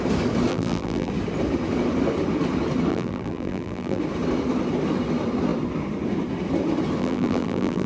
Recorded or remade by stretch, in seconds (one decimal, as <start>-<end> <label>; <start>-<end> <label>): 0.0-0.5 recorded; 0.5-1.1 remade; 1.1-2.9 recorded; 2.9-4.0 remade; 4.0-7.0 recorded; 7.0-7.9 remade